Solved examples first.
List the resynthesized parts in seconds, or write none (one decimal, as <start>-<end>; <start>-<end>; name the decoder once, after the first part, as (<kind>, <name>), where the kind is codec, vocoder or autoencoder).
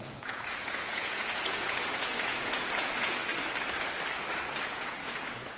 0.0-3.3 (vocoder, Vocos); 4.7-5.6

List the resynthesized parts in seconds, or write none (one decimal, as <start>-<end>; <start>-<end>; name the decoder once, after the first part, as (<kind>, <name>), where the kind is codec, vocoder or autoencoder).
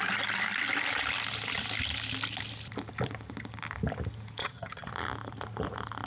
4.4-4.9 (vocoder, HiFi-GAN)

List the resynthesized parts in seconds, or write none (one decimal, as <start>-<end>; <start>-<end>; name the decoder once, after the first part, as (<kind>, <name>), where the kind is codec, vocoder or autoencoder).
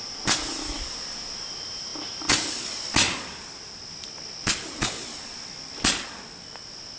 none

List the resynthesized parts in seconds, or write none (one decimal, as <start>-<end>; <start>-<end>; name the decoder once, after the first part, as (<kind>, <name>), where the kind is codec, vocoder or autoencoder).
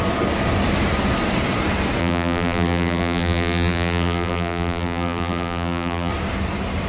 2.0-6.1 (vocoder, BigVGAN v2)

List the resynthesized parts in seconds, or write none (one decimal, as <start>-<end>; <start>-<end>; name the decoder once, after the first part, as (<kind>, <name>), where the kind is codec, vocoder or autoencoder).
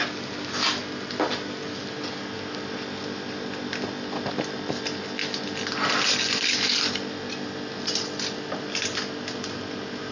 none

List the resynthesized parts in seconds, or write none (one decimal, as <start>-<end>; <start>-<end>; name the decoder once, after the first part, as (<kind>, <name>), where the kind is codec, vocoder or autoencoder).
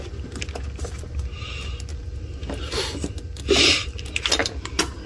none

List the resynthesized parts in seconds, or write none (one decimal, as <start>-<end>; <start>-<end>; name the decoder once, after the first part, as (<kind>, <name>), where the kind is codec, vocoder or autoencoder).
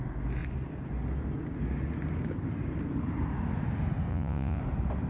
4.1-4.6 (vocoder, Vocos)